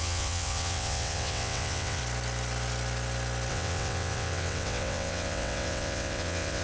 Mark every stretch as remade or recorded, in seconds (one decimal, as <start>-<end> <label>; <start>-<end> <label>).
0.0-2.0 remade; 2.0-3.5 recorded; 3.5-6.6 remade